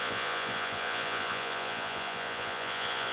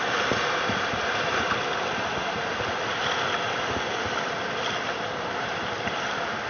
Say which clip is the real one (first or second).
second